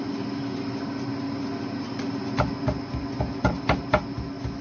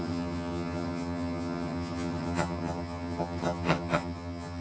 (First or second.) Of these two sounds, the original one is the first